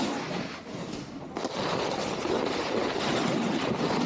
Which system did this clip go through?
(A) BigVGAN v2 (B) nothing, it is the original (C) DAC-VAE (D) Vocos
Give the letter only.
B